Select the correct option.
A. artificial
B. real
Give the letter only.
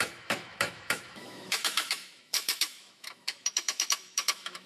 A